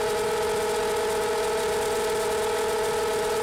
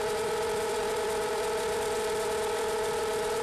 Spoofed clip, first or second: second